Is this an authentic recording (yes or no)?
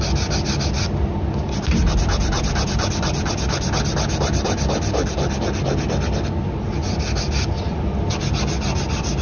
yes